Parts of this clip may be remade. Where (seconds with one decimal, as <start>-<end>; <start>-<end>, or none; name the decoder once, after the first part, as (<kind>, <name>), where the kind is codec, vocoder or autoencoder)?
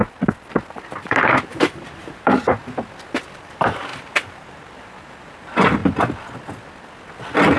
1.0-2.6 (vocoder, BigVGAN v2); 3.4-5.8